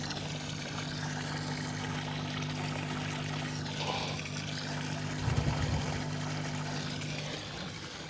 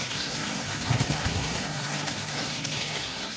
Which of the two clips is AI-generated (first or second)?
second